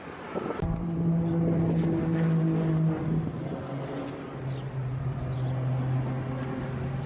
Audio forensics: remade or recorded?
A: recorded